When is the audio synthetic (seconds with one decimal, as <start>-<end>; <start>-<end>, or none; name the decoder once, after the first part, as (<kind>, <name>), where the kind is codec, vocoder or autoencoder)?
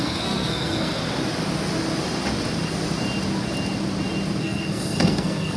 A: 0.0-1.0 (codec, SNAC); 4.4-5.6